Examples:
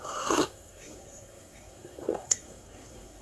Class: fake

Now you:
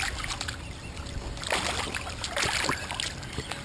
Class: real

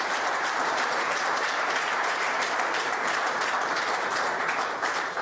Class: fake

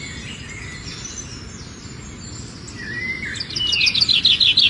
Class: real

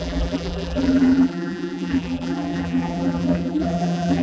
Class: fake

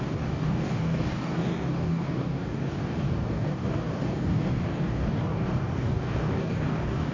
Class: fake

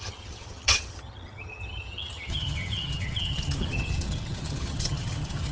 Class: fake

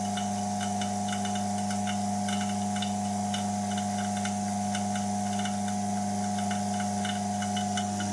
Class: real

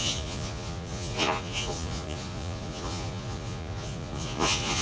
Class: fake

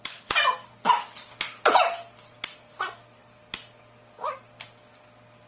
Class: real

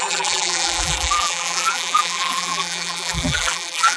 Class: fake